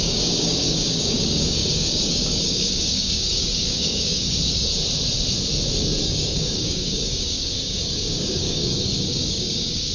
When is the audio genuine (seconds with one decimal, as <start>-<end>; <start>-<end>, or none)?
4.7-6.0